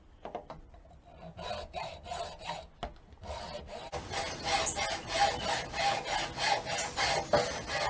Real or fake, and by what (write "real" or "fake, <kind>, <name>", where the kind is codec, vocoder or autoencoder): real